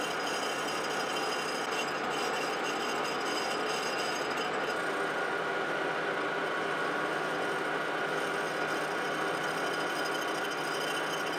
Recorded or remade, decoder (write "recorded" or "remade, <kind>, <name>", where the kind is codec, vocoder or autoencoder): recorded